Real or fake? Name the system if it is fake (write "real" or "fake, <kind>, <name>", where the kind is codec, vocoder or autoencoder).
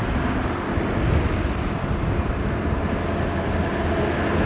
real